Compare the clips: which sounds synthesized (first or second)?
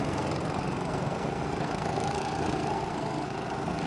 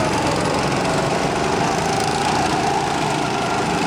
first